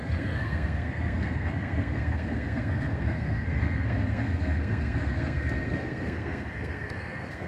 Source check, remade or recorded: remade